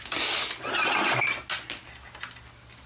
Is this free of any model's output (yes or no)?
yes